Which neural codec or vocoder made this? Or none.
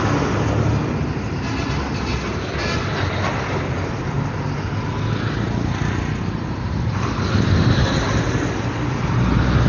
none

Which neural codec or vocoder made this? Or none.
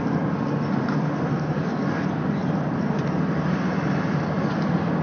vocoder, BigVGAN v2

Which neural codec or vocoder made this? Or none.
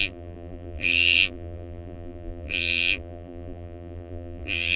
vocoder, BigVGAN v2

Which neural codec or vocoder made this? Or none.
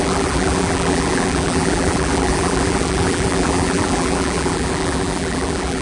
vocoder, BigVGAN v2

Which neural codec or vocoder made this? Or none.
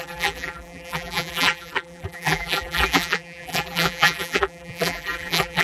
vocoder, BigVGAN v2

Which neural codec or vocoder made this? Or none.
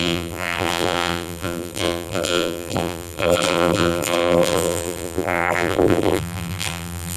vocoder, BigVGAN v2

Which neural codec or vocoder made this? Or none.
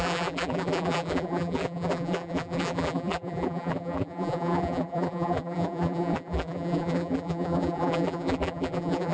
vocoder, BigVGAN v2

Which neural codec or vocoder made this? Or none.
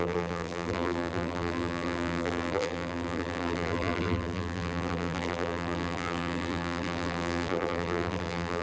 vocoder, BigVGAN v2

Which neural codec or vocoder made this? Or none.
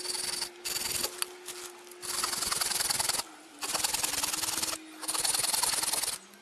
none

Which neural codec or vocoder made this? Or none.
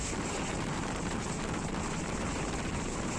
vocoder, BigVGAN v2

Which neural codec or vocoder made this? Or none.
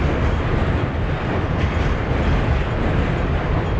none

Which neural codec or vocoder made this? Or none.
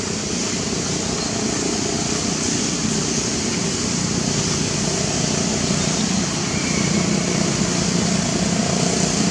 none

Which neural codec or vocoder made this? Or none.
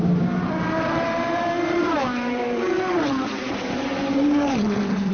vocoder, BigVGAN v2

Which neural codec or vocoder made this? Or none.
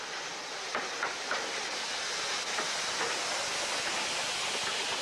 none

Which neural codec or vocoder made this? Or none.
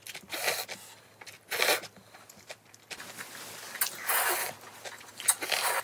none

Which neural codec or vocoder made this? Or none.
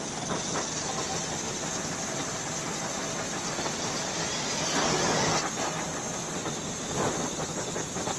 none